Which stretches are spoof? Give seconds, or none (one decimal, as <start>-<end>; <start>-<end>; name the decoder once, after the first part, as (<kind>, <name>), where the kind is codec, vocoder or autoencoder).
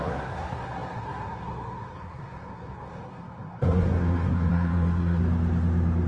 0.0-5.2 (codec, SNAC)